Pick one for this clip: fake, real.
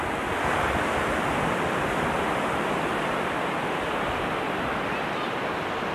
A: real